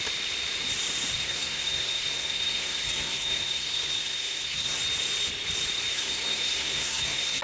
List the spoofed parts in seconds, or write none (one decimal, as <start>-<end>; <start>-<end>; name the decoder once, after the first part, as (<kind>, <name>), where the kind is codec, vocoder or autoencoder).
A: 1.2-4.8 (codec, SNAC); 5.9-7.4